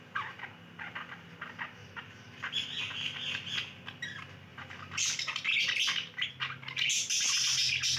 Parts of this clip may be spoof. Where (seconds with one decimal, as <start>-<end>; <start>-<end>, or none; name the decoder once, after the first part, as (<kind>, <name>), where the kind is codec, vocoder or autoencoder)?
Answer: 1.8-3.6 (vocoder, BigVGAN v2); 4.5-6.3